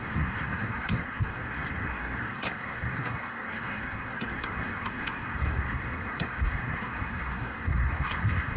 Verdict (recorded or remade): remade